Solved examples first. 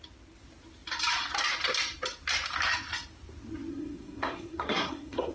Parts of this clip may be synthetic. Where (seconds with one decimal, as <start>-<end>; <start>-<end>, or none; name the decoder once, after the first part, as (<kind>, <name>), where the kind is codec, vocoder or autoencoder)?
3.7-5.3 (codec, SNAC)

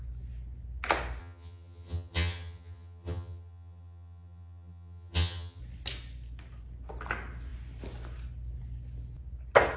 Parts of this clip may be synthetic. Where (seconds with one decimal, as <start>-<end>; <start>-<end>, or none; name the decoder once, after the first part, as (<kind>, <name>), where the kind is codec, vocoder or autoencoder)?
1.2-5.6 (vocoder, HiFi-GAN)

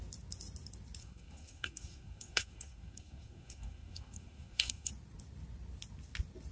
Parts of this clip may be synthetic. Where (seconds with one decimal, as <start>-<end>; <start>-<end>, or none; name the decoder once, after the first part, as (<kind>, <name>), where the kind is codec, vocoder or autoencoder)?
1.0-4.9 (codec, SNAC)

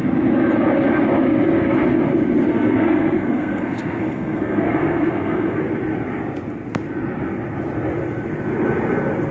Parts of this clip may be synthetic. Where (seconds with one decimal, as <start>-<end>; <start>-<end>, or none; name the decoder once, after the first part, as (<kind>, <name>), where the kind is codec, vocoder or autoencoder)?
2.5-5.6 (codec, SNAC)

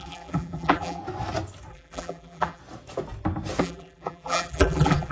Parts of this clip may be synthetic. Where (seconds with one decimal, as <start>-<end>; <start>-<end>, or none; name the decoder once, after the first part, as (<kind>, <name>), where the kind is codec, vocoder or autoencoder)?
0.0-1.0 (vocoder, BigVGAN v2); 1.7-2.6; 3.6-5.1

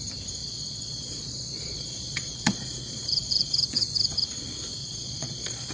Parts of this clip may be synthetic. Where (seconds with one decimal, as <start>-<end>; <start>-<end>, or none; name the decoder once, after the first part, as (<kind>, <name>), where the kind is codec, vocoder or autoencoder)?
0.4-3.8 (vocoder, Vocos); 4.8-5.7

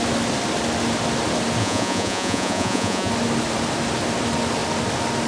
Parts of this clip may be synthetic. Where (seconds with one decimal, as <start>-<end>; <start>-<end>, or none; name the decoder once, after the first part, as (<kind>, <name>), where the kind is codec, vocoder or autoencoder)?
1.6-3.1 (vocoder, Vocos)